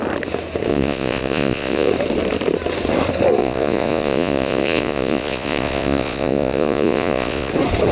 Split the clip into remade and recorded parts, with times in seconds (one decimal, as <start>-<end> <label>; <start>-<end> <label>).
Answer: 0.0-0.7 recorded; 0.7-1.9 remade; 1.9-3.4 recorded; 3.4-7.5 remade; 7.5-7.9 recorded